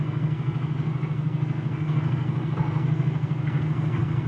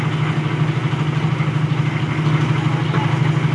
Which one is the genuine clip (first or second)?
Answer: second